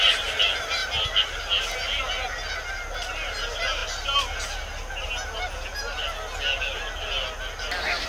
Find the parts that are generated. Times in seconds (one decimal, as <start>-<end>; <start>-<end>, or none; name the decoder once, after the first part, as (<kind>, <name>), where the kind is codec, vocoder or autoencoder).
none